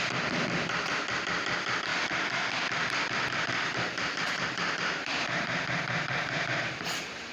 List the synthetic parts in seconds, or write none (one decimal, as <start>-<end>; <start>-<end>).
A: 3.7-7.3